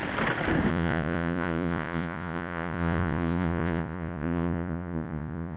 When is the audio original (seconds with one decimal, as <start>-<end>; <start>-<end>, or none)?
0.0-0.7